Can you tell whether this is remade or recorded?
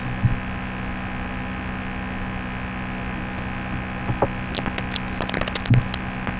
recorded